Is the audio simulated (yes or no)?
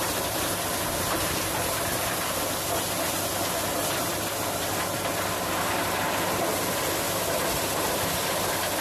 yes